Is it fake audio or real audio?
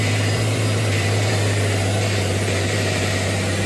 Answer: fake